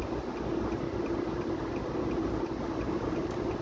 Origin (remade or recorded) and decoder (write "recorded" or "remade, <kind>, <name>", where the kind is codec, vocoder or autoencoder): recorded